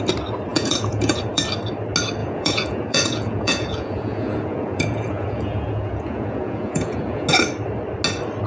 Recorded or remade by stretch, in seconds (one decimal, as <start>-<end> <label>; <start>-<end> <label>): 0.0-0.5 recorded; 0.5-1.4 remade; 1.4-2.2 recorded; 2.2-7.3 remade; 7.3-8.5 recorded